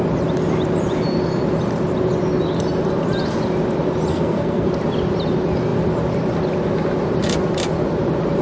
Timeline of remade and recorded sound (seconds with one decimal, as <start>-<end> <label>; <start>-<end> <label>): 0.0-4.1 recorded; 4.1-4.7 remade; 4.7-8.4 recorded

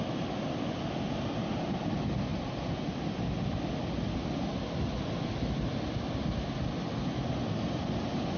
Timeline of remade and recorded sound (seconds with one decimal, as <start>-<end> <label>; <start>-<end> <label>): 0.0-8.4 recorded

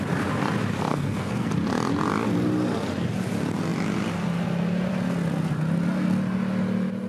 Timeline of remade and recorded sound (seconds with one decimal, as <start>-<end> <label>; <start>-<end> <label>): 0.0-0.9 recorded; 0.9-1.5 remade; 1.5-7.1 recorded

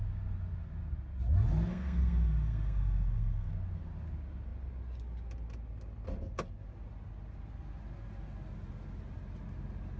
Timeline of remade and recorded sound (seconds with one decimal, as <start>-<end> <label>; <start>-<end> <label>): 0.0-1.7 recorded; 1.7-3.5 remade; 3.5-10.0 recorded

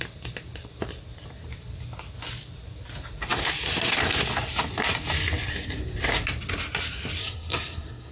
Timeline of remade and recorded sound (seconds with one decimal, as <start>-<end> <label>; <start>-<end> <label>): 0.0-7.2 recorded; 7.2-8.1 remade

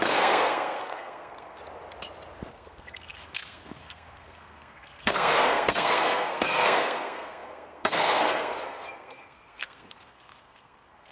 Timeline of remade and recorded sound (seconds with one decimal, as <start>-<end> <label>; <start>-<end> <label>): 0.0-1.6 remade; 1.6-2.5 recorded; 2.5-11.1 remade

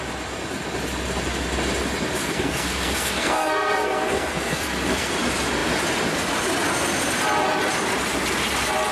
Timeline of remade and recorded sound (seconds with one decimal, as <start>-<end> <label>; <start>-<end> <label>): 0.0-2.2 recorded; 2.2-5.1 remade; 5.1-8.9 recorded

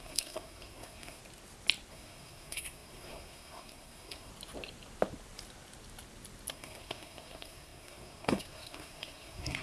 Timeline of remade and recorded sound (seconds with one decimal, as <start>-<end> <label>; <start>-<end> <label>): 0.0-1.2 remade; 1.2-1.9 recorded; 1.9-4.3 remade; 4.3-6.5 recorded; 6.5-9.6 remade